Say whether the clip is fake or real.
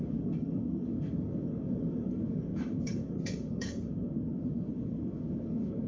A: fake